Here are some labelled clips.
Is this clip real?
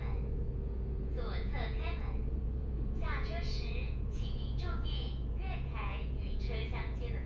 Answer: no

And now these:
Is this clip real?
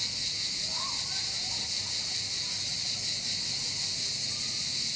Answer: yes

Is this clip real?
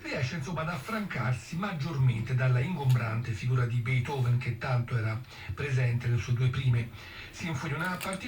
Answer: yes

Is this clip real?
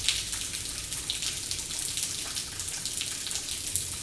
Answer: yes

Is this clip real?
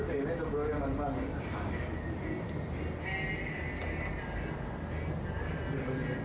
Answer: yes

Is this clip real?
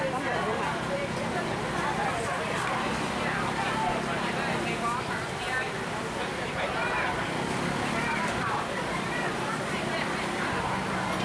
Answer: no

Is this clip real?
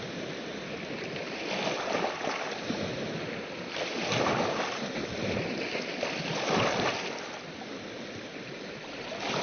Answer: yes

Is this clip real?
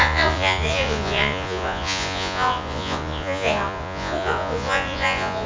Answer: no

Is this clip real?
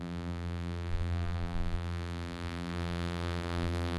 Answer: no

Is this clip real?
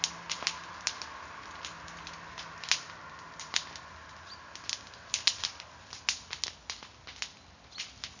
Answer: yes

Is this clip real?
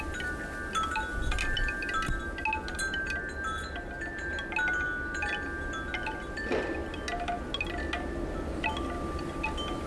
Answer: yes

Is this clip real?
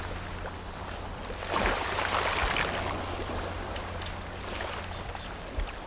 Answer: yes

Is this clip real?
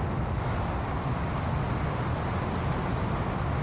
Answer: yes